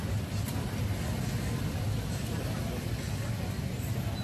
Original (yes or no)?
yes